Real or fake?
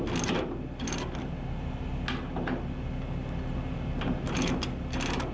real